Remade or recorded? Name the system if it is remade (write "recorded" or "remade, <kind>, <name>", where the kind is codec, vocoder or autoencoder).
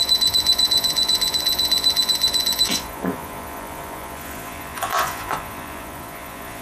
remade, vocoder, Vocos